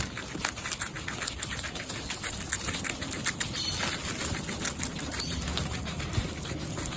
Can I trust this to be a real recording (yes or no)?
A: yes